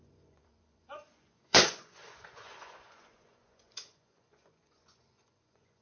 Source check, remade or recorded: remade